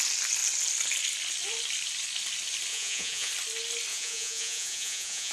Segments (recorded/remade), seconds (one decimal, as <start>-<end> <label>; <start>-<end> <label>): 0.0-2.7 recorded; 2.7-3.3 remade; 3.3-3.9 recorded; 3.9-5.3 remade